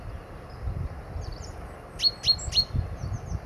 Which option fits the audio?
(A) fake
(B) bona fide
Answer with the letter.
B